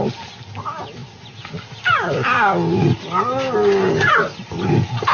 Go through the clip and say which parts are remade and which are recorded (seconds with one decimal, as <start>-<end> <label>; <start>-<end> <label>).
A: 0.0-5.1 recorded